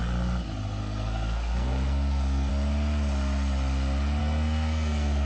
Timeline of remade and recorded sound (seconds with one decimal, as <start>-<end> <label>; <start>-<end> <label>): 0.0-0.8 recorded; 0.8-2.5 remade; 2.5-4.2 recorded; 4.2-5.3 remade